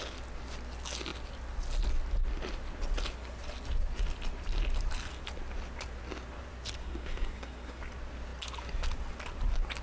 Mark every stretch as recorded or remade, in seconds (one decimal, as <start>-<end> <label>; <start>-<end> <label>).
0.0-6.8 recorded; 6.8-7.8 remade; 7.8-9.8 recorded